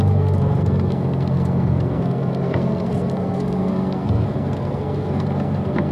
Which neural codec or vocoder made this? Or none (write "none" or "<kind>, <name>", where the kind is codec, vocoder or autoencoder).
codec, SNAC